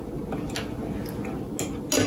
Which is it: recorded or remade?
recorded